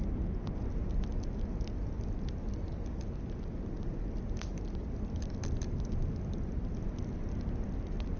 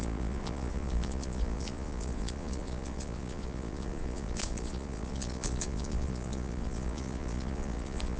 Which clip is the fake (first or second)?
second